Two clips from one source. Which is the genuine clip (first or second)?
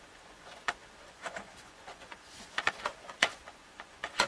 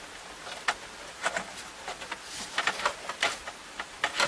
second